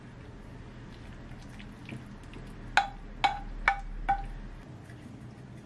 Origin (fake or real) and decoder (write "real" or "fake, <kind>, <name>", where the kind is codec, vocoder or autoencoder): real